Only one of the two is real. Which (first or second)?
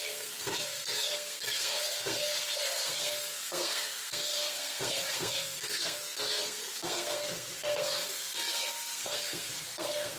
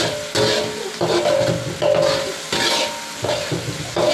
second